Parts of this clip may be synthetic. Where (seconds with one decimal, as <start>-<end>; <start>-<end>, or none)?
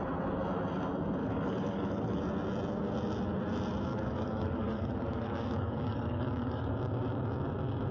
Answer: 1.2-2.2; 3.9-6.7